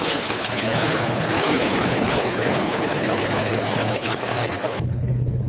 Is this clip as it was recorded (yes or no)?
no